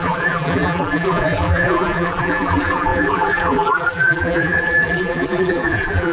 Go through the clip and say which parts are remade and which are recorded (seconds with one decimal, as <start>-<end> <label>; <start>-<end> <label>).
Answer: 0.0-6.1 remade